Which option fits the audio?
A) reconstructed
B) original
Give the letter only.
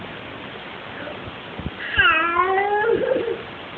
B